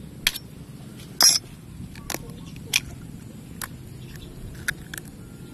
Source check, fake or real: real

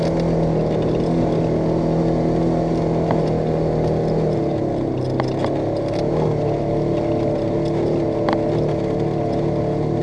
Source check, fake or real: real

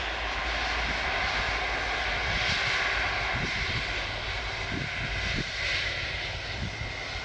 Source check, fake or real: real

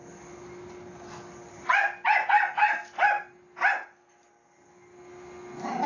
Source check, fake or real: real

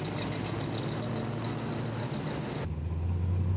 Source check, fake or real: real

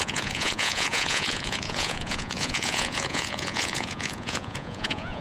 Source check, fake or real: fake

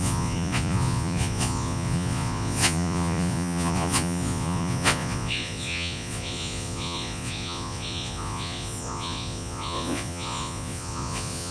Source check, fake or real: fake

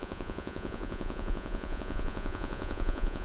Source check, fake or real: fake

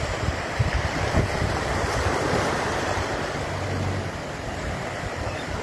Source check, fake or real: real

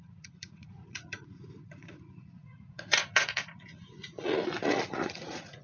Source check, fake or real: fake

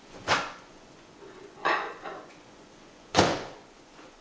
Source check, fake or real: fake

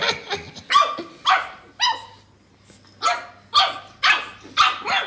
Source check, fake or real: real